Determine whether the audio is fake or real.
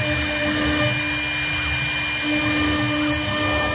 real